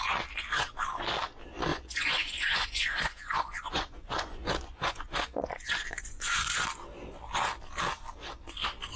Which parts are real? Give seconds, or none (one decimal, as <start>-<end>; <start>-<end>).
0.0-1.7; 6.6-9.0